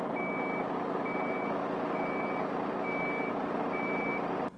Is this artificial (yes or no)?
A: no